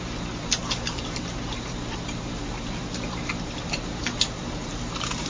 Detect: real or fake fake